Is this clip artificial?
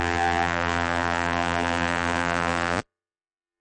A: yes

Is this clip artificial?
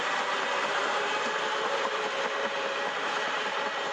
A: yes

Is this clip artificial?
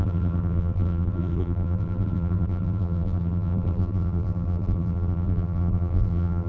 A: yes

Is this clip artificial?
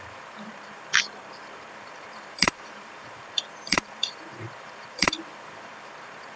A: yes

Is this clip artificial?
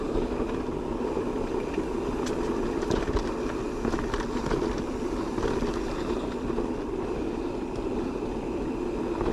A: no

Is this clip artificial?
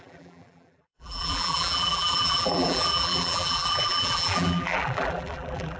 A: yes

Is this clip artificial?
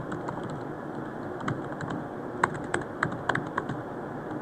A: no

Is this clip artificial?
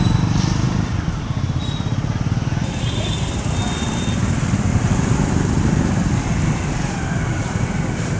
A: yes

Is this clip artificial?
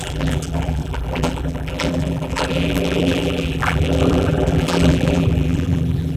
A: yes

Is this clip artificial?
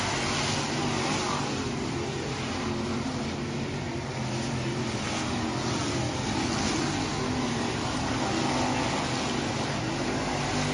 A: no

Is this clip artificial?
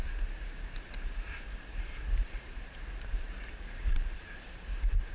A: yes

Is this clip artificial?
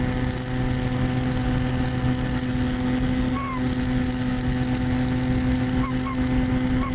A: no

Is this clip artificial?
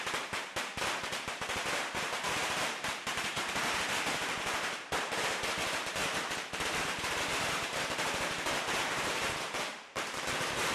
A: yes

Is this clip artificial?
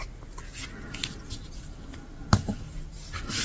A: no